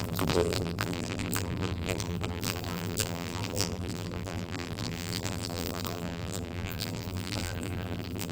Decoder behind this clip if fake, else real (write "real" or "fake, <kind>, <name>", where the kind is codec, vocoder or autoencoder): fake, vocoder, BigVGAN v2